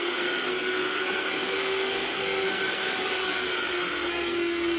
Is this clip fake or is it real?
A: fake